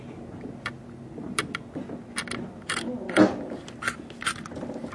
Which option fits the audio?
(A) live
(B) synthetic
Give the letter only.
A